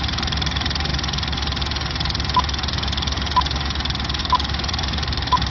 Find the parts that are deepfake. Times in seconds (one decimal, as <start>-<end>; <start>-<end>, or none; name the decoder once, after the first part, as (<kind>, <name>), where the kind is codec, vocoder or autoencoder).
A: 0.0-0.9 (vocoder, BigVGAN v2); 4.2-5.5